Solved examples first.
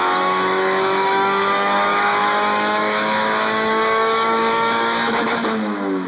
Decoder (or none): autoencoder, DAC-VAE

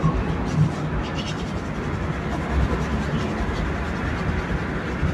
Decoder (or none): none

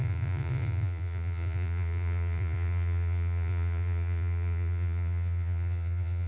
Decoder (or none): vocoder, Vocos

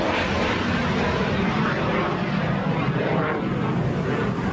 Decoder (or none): none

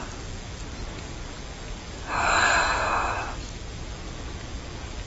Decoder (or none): none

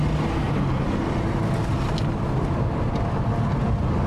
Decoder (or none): none